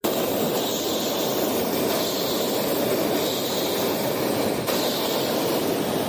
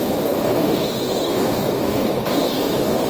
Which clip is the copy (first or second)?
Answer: second